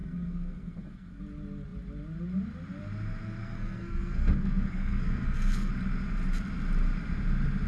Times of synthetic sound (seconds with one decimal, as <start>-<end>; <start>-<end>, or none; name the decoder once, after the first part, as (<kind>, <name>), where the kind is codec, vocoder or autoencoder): 0.0-1.2 (codec, SNAC); 3.4-5.7